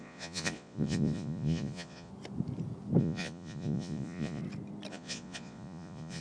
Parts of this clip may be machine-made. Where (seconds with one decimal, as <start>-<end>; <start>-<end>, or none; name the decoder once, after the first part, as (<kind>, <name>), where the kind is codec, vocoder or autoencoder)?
0.0-2.1 (vocoder, Vocos); 3.0-4.4; 4.9-6.2